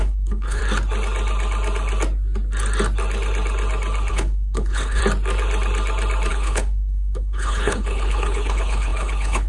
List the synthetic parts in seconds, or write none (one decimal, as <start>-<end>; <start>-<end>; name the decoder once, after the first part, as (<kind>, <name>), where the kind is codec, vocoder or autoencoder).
0.0-0.6 (codec, HILCodec); 4.1-5.0; 6.3-9.5